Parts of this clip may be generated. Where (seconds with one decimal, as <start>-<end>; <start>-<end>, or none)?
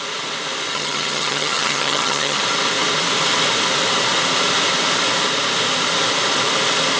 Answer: 0.7-2.4